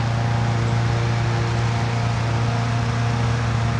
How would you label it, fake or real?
real